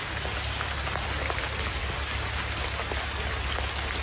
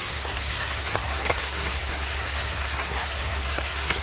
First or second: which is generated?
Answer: second